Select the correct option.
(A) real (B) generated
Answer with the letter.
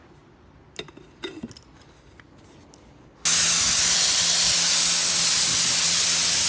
A